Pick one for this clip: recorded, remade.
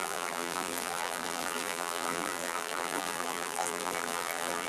remade